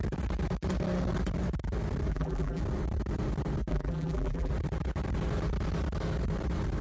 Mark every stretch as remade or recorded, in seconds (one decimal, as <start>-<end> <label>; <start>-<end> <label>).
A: 0.0-2.1 recorded; 2.1-2.6 remade; 2.6-3.7 recorded; 3.7-4.5 remade; 4.5-6.8 recorded